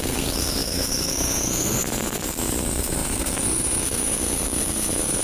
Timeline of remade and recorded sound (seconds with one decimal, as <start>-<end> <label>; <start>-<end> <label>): 0.0-5.2 remade

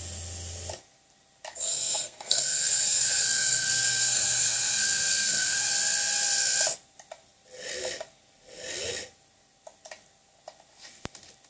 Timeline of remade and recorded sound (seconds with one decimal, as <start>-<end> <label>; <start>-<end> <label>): 0.0-1.5 recorded; 1.5-5.7 remade; 5.7-11.5 recorded

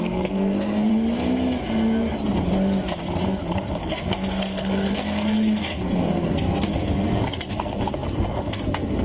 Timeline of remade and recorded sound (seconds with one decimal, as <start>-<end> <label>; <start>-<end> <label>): 0.0-0.9 remade; 0.9-3.8 recorded; 3.8-9.0 remade